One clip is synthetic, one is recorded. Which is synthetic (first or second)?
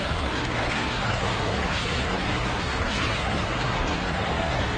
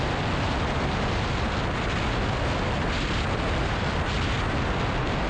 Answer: first